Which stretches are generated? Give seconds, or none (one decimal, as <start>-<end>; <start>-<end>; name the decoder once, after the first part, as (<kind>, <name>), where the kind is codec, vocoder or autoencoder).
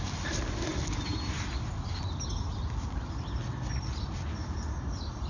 none